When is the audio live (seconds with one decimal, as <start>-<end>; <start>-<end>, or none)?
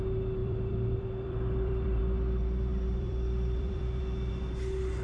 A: 0.0-0.4; 2.0-2.7; 4.0-5.0